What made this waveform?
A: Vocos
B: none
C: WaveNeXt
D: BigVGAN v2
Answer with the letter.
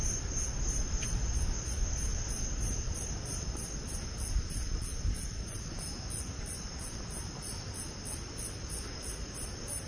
B